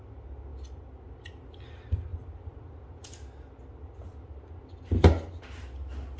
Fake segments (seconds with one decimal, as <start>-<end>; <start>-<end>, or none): none